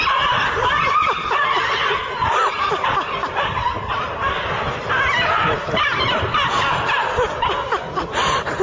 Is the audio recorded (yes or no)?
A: yes